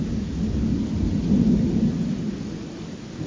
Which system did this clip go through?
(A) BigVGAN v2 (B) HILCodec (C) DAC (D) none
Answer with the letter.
D